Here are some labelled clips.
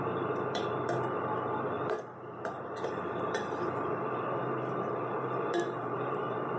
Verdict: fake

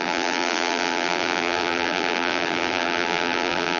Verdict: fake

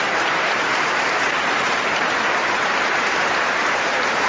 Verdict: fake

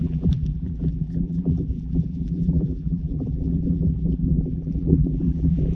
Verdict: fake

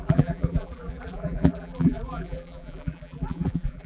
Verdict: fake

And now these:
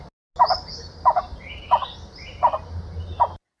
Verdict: real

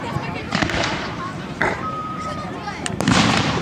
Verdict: fake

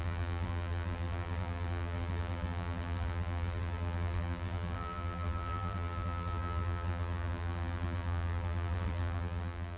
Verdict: fake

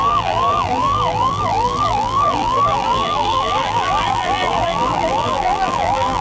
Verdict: fake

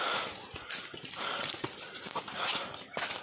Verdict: fake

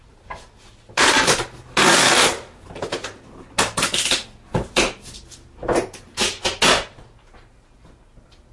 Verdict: real